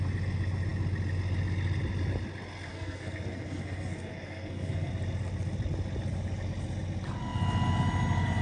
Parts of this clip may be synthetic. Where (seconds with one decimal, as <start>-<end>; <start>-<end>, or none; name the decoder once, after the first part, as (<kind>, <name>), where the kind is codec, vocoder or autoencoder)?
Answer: 2.7-4.9 (codec, SNAC)